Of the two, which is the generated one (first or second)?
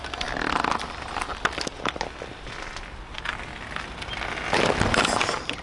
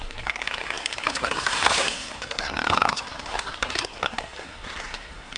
second